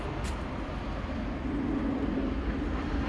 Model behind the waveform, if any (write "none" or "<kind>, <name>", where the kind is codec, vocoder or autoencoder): none